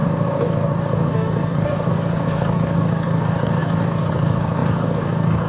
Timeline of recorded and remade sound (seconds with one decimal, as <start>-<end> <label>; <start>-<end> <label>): 0.0-5.5 remade

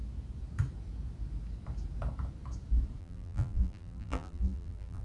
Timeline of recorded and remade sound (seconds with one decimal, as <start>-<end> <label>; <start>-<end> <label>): 0.0-3.0 recorded; 3.0-5.0 remade